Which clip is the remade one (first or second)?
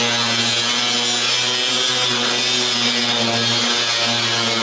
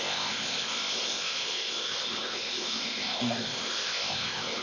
second